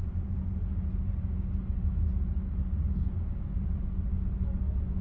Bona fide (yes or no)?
yes